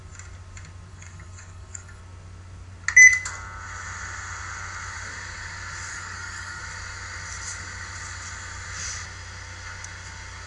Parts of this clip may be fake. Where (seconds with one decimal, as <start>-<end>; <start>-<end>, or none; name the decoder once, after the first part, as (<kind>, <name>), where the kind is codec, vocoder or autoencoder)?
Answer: 0.9-2.0 (codec, DAC); 5.9-6.6